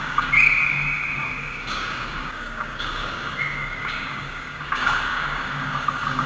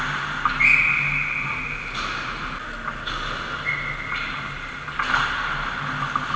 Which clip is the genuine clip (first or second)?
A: second